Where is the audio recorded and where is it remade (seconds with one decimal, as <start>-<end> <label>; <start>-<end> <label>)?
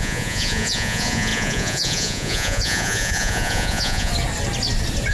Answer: 0.0-4.1 remade; 4.1-5.1 recorded